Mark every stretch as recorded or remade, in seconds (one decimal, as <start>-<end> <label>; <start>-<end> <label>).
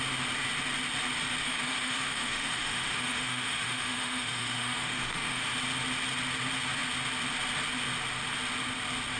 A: 0.0-1.4 recorded; 1.4-5.4 remade; 5.4-9.2 recorded